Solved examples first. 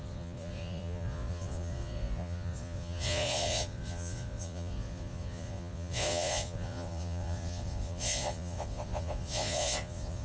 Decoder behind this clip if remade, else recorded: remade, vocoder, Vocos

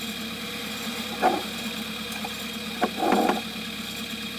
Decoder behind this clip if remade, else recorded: recorded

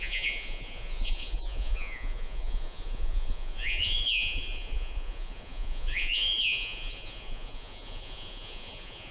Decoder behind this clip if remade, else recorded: remade, vocoder, Vocos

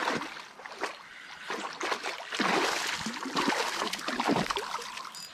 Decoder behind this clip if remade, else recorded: recorded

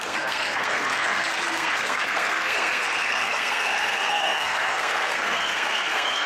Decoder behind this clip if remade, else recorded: remade, codec, SNAC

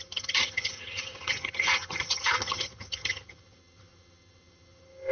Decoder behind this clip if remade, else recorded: remade, vocoder, HiFi-GAN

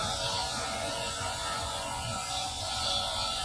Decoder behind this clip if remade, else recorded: remade, vocoder, Vocos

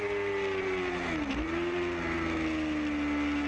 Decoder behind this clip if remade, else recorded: recorded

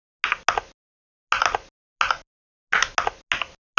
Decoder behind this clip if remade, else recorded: recorded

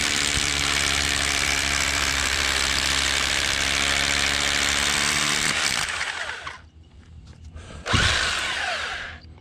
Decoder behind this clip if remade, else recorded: remade, vocoder, BigVGAN v2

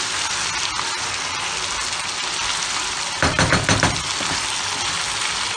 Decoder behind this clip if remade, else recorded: recorded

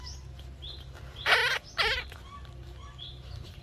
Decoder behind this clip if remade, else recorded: recorded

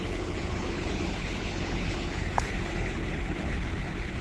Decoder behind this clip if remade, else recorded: remade, codec, HILCodec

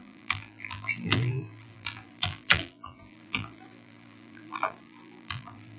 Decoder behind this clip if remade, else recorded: remade, vocoder, BigVGAN v2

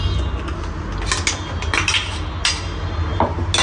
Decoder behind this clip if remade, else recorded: recorded